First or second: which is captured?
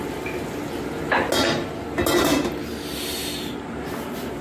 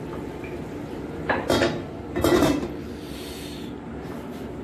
first